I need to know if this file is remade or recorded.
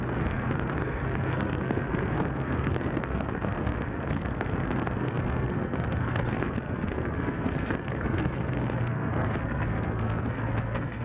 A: remade